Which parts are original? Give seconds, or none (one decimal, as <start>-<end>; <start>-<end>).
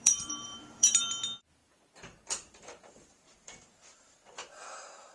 1.0-1.6